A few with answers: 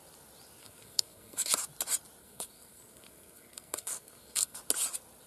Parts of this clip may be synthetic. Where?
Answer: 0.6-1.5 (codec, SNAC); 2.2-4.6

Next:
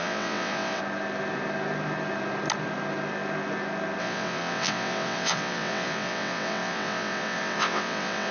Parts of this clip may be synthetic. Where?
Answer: 0.0-0.8 (vocoder, WaveNeXt); 4.0-8.3

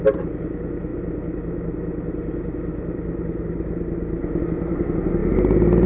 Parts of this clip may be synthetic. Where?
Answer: none

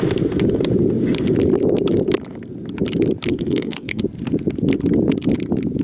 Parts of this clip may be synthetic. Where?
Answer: 3.3-4.0 (codec, SNAC)

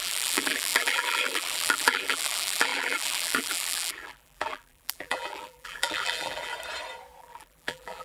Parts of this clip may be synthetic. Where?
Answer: 0.0-6.5 (vocoder, BigVGAN v2); 7.2-8.0